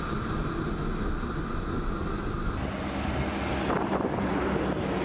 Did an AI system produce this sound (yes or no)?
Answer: no